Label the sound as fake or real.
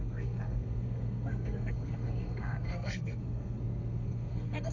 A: fake